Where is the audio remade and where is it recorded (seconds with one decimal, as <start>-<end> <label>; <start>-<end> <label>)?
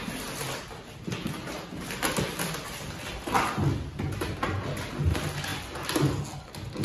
0.0-6.8 recorded